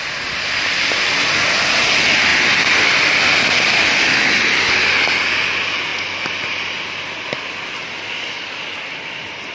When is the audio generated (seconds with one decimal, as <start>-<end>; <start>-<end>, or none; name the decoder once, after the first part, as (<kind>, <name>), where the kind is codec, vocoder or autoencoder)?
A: none